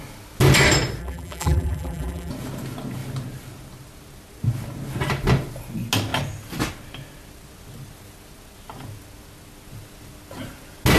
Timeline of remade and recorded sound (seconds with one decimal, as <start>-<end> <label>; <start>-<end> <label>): 0.0-1.0 recorded; 1.0-2.3 remade; 2.3-11.0 recorded